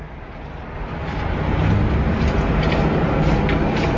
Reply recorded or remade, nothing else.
recorded